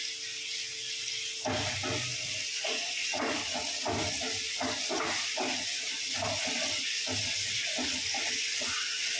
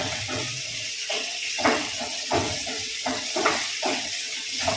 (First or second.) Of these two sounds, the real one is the first